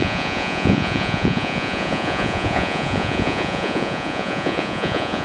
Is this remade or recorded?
remade